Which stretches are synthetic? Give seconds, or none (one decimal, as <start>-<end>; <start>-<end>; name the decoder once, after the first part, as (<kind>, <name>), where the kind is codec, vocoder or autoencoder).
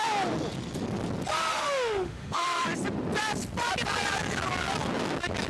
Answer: 1.5-2.7 (autoencoder, DAC-VAE)